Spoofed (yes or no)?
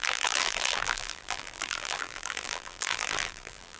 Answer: yes